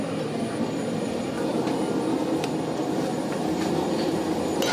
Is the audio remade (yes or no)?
no